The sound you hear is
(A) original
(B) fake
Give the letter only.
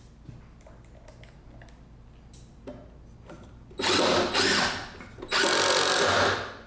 A